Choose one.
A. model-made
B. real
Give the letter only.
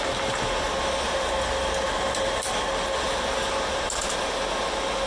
B